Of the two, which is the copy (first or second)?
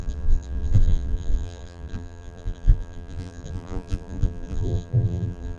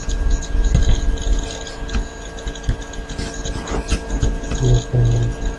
first